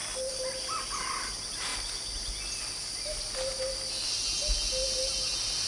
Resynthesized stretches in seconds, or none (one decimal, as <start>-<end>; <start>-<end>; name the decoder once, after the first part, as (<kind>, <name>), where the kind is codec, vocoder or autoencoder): none